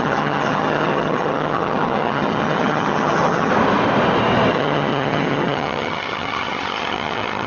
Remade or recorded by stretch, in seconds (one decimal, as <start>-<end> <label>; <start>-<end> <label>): 0.0-3.5 remade; 3.5-4.5 recorded; 4.5-7.5 remade